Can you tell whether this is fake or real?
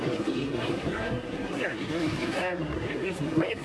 fake